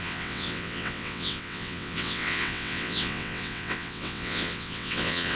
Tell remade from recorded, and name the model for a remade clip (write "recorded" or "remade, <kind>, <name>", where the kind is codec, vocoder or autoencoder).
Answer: remade, vocoder, WaveNeXt